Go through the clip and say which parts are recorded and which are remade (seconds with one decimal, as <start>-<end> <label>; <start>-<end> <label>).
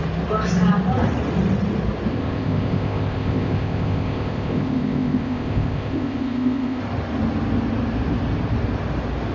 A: 0.0-2.1 recorded; 2.1-6.8 remade; 6.8-9.3 recorded